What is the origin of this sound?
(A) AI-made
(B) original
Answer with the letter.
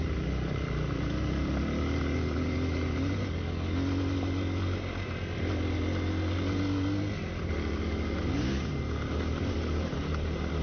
B